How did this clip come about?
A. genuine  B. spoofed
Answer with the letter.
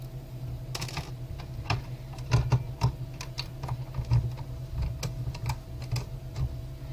A